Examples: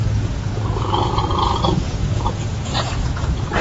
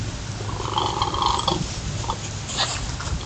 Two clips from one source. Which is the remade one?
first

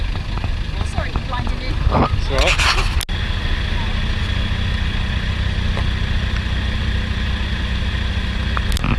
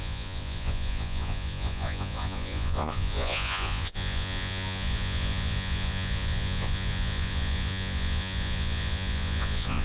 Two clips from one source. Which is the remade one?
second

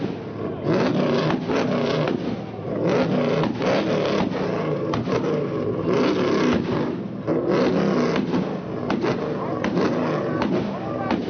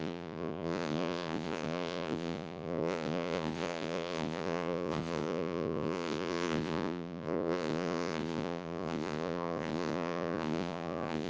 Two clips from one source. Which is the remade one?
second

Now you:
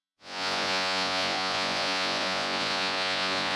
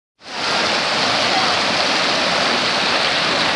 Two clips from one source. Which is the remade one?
first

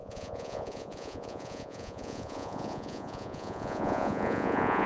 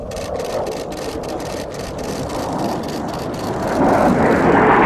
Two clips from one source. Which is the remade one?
first